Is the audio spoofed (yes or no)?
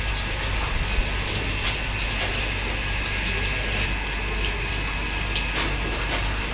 no